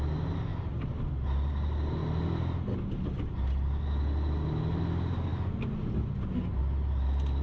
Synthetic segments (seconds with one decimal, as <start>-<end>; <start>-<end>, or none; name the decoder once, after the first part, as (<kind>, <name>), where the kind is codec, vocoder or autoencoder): none